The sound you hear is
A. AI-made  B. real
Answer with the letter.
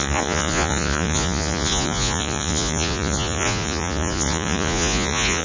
A